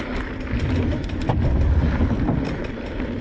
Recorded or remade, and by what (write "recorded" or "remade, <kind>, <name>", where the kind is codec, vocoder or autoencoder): recorded